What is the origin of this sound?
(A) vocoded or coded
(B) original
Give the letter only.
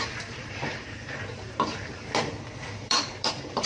A